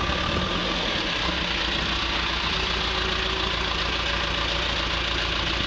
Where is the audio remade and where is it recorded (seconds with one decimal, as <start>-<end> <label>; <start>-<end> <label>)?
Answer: 0.0-5.7 recorded